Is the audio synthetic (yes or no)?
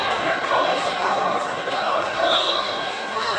yes